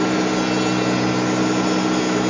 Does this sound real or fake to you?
real